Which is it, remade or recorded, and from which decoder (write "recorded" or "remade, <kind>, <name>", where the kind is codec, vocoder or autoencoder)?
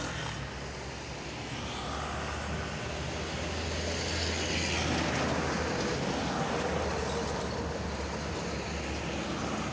recorded